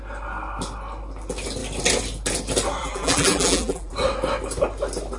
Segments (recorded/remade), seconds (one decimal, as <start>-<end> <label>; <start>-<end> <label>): 0.0-2.8 recorded; 2.8-3.9 remade; 3.9-5.2 recorded